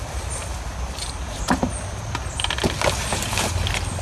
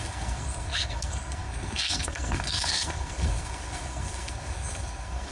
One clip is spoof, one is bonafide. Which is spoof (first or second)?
second